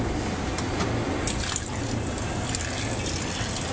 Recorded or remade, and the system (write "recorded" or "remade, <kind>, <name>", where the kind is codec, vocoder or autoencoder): recorded